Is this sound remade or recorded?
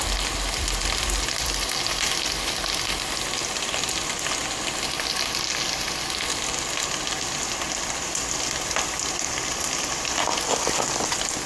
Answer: recorded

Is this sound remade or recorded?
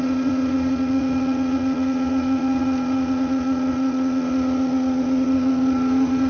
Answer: remade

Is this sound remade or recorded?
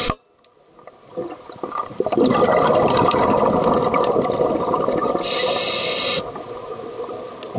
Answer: recorded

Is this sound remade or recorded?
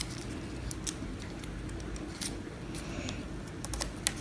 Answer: recorded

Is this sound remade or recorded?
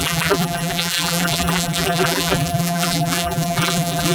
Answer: remade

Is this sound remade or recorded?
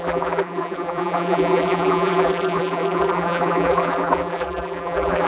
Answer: remade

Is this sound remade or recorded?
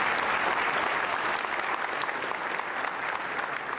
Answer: recorded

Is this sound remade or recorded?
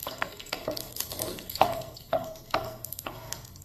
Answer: remade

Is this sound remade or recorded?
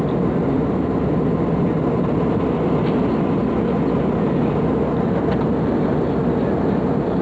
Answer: recorded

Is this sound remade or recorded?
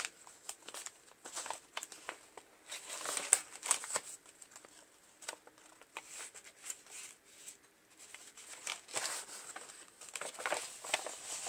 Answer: recorded